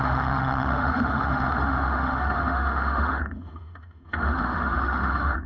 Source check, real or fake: fake